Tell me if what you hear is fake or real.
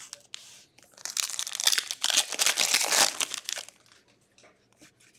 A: real